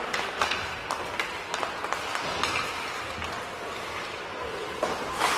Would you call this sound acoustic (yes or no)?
yes